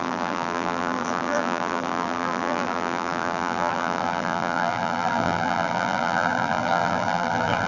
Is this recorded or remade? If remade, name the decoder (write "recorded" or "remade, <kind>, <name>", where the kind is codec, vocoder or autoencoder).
remade, vocoder, BigVGAN v2